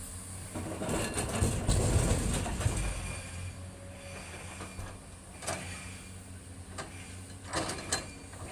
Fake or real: real